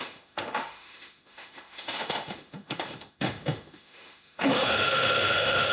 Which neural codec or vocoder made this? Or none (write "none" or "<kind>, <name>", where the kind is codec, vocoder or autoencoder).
autoencoder, DAC-VAE